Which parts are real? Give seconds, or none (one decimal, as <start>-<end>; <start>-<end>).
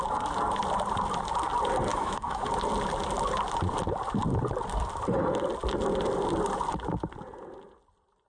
0.0-1.9; 2.5-8.3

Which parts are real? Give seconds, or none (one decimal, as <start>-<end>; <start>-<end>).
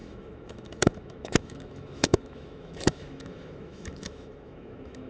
none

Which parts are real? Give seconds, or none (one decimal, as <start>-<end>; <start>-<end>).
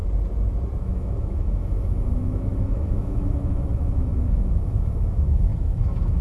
0.0-0.8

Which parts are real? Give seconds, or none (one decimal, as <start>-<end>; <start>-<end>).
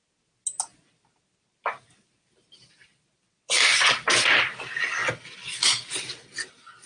0.0-6.9